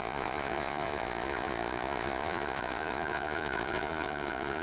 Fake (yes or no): yes